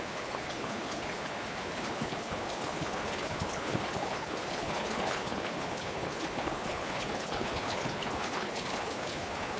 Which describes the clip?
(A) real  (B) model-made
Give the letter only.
B